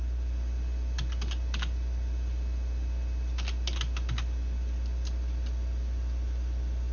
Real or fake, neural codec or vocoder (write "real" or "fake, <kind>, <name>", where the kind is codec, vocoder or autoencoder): real